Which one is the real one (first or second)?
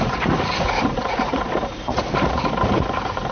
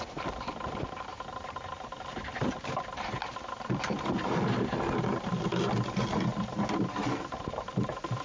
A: second